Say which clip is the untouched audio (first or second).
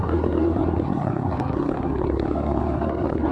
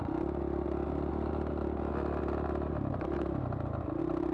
second